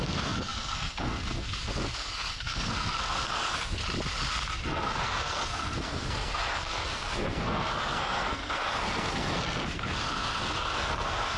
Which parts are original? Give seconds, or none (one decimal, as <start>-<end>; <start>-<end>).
3.8-4.5